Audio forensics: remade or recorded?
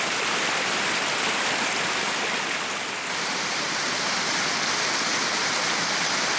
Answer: recorded